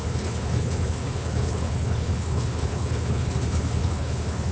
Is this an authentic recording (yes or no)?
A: no